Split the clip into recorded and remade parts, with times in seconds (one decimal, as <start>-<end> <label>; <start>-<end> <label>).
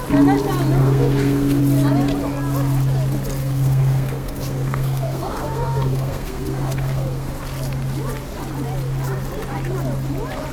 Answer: 0.0-0.8 recorded; 0.8-1.6 remade; 1.6-3.4 recorded; 3.4-7.3 remade; 7.3-10.5 recorded